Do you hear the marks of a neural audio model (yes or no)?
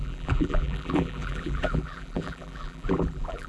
yes